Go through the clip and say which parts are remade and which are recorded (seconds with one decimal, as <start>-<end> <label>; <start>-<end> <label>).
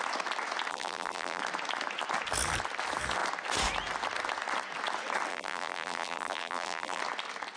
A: 0.0-0.7 recorded; 0.7-1.4 remade; 1.4-5.3 recorded; 5.3-7.0 remade; 7.0-7.6 recorded